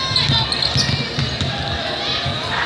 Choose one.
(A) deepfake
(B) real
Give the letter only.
B